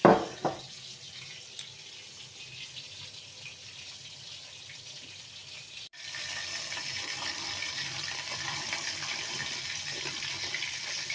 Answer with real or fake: real